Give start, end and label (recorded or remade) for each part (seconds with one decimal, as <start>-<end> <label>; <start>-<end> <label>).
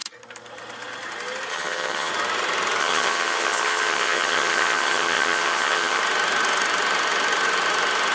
0.0-1.5 recorded; 1.5-2.1 remade; 2.1-2.8 recorded; 2.8-6.0 remade; 6.0-8.1 recorded